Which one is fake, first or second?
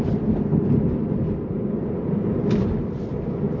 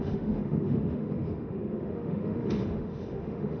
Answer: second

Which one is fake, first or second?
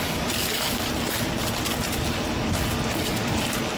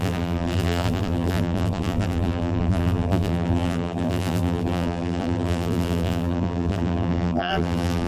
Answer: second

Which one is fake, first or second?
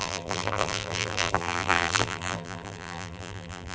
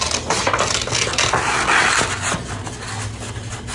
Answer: first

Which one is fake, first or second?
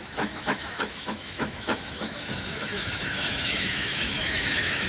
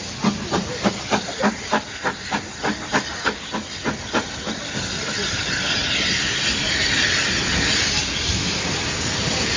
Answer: first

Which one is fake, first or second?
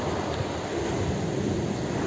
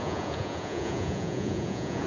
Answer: second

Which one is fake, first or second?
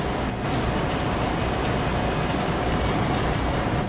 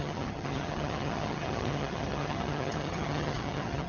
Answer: second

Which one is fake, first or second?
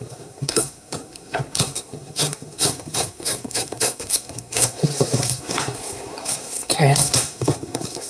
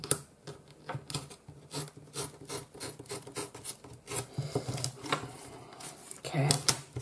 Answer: first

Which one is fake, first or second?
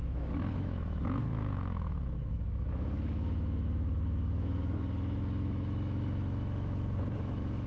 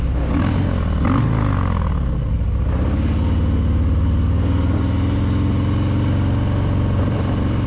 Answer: first